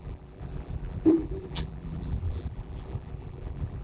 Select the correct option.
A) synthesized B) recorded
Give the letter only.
A